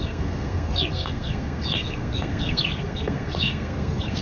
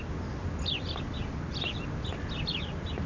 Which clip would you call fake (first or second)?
first